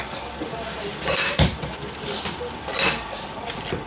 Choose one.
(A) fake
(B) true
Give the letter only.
B